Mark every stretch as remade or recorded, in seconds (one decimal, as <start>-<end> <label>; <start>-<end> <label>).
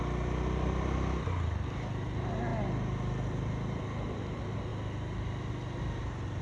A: 0.0-2.5 recorded; 2.5-3.5 remade; 3.5-4.7 recorded; 4.7-5.5 remade; 5.5-6.4 recorded